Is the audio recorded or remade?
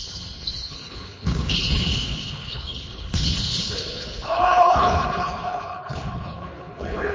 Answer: remade